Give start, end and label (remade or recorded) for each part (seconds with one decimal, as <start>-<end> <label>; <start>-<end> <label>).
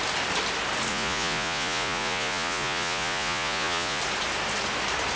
0.0-0.9 recorded; 0.9-4.0 remade; 4.0-5.2 recorded